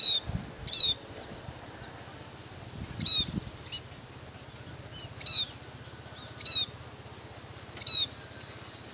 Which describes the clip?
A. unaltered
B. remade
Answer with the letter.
A